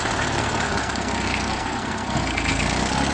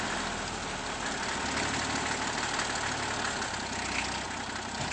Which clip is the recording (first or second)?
second